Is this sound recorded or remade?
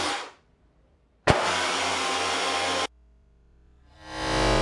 remade